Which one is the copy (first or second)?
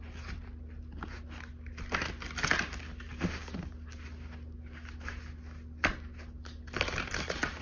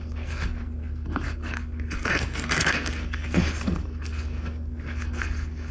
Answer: second